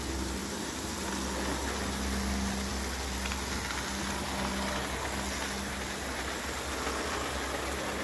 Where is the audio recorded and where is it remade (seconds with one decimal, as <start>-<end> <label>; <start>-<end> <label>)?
0.0-0.4 recorded; 0.4-1.1 remade; 1.1-8.0 recorded